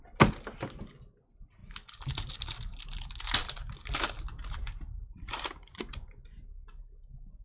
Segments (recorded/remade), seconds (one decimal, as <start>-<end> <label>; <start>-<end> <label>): 0.0-4.6 recorded; 4.6-6.4 remade; 6.4-7.4 recorded